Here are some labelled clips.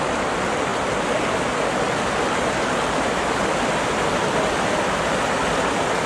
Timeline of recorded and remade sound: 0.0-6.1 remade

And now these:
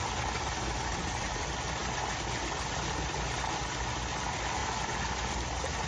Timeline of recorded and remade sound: 0.0-5.9 recorded

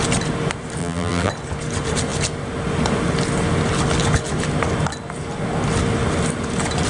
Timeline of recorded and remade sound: 0.0-0.8 recorded; 0.8-1.3 remade; 1.3-6.9 recorded

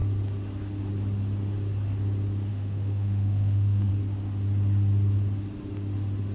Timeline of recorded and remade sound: 0.0-2.5 recorded; 2.5-3.9 remade; 3.9-6.3 recorded

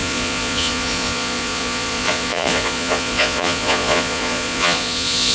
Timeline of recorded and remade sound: 0.0-5.3 remade

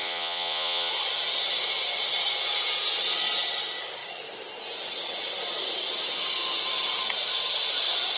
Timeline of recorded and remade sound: 0.0-0.9 remade; 0.9-8.2 recorded

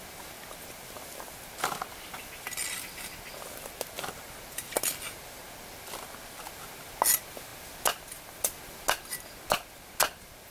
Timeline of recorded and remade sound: 0.0-10.5 recorded

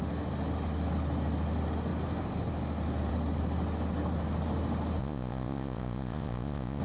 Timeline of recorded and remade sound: 0.0-5.0 recorded; 5.0-6.8 remade